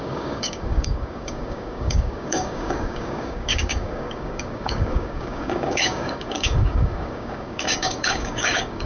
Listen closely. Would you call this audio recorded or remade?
remade